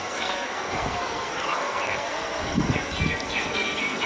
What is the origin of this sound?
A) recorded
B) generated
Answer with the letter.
B